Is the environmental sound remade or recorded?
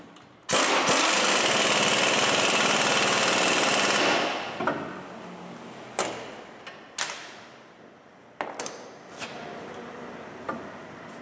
recorded